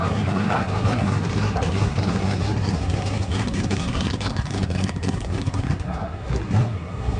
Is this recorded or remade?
remade